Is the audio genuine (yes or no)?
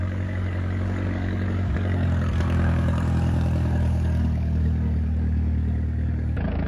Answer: no